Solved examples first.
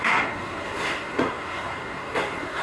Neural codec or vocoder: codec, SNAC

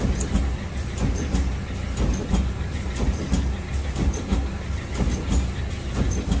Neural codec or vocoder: none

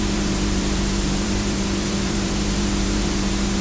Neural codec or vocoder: vocoder, BigVGAN v2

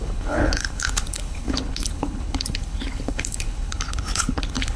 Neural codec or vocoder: codec, HILCodec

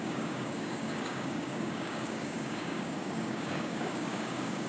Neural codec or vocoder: codec, DAC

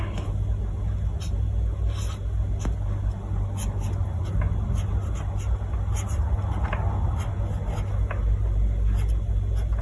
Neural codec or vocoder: none